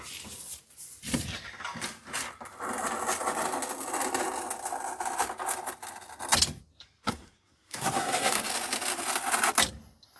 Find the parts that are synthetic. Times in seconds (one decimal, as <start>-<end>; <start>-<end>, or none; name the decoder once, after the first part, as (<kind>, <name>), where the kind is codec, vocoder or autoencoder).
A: 7.0-8.5 (codec, SNAC)